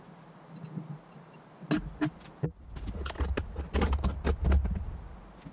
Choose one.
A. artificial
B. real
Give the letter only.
B